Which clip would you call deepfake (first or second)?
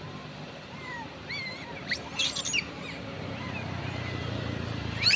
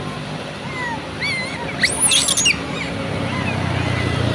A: first